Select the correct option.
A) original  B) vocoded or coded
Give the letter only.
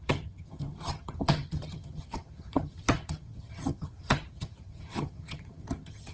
B